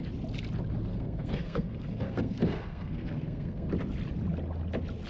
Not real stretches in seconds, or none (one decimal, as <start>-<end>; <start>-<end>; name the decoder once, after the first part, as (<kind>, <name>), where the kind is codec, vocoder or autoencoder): 0.9-3.7 (codec, SNAC)